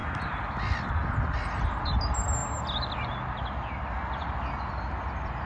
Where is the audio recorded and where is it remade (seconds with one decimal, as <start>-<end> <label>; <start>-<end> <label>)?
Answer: 0.0-5.5 recorded